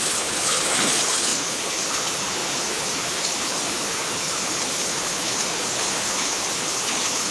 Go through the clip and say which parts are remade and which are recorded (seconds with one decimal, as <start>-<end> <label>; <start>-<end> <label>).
0.0-7.3 remade